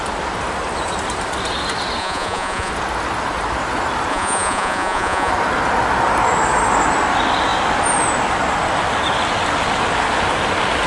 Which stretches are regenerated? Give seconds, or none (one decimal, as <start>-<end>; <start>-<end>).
2.0-2.7; 4.1-5.3